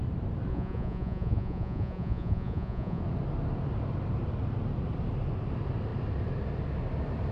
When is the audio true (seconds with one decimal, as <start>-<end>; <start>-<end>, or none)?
0.0-0.5; 3.0-7.3